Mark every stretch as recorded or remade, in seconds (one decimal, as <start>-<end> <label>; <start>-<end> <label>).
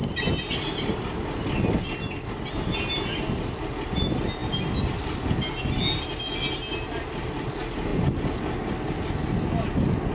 0.0-10.1 recorded